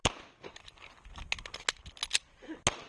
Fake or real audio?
real